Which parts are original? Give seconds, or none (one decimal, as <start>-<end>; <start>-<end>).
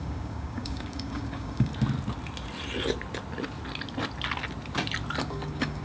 1.7-5.2